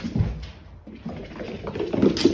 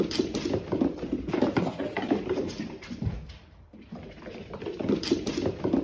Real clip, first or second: first